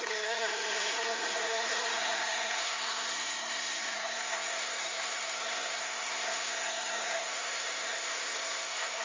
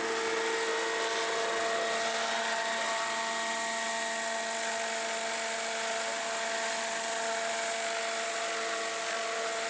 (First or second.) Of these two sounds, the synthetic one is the first